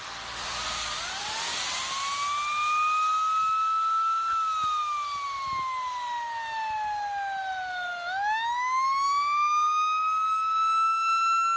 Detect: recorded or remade recorded